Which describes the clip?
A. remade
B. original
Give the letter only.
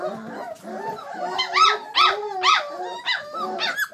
B